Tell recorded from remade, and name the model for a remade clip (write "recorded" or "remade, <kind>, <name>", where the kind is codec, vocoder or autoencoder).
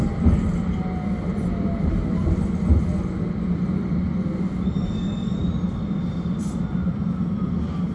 recorded